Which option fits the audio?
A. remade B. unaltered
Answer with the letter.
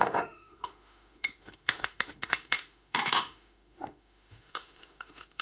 A